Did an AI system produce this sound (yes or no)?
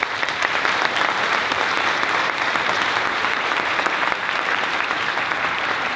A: yes